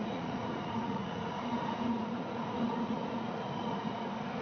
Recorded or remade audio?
remade